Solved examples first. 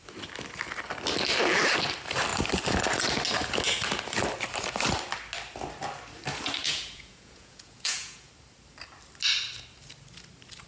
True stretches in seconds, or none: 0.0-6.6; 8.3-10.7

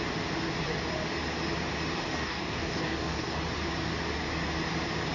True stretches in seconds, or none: 0.0-2.1; 3.4-5.1